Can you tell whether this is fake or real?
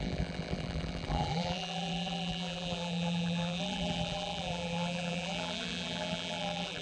fake